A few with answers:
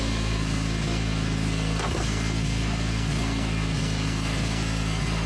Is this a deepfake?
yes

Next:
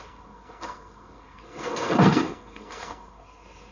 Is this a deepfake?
yes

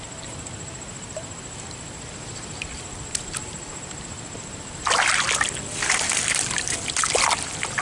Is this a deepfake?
no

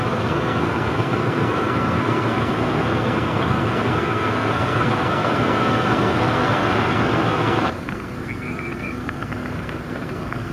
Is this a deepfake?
yes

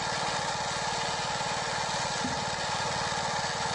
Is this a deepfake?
no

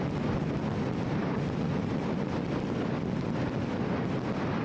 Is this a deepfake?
no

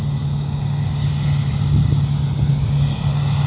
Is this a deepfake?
no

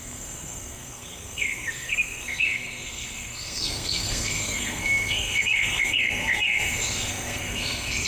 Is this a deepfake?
yes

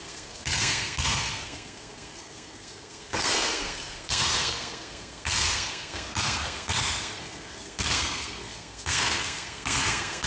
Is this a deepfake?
yes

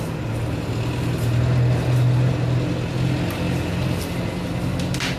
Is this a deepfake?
no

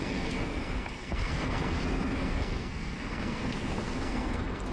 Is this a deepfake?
yes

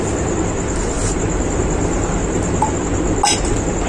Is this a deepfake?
no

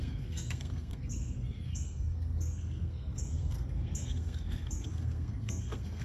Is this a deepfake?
yes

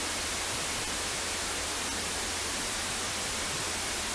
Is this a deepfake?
no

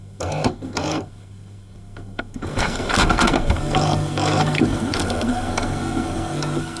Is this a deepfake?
yes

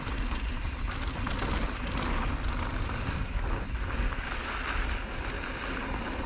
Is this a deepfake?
no